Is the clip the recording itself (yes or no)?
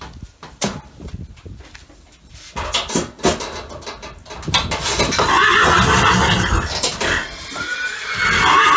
yes